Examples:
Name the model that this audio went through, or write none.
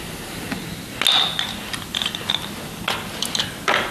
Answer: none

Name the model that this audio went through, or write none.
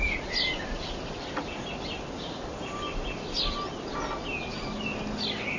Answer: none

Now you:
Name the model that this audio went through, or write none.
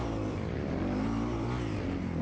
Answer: none